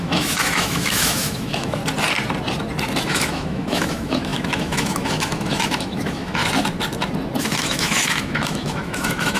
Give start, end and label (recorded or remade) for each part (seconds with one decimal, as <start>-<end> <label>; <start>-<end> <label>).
0.0-1.8 remade; 1.8-3.1 recorded; 3.1-6.4 remade; 6.4-7.4 recorded; 7.4-9.4 remade